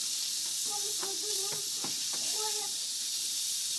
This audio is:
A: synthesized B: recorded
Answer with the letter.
A